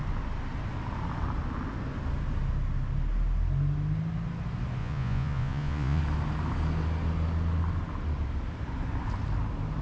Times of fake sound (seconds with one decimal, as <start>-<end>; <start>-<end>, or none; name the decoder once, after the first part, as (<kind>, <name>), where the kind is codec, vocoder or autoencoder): 4.8-6.0 (vocoder, Vocos)